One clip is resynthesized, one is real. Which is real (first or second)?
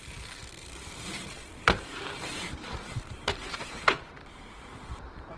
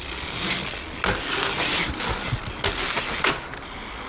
second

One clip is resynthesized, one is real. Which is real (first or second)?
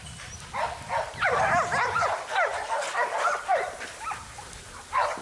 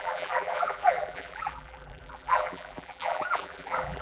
first